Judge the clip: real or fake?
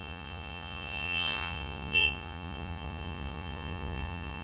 fake